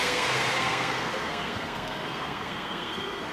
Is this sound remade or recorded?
remade